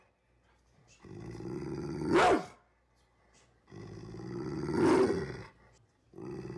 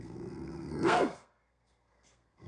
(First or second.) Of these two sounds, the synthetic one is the second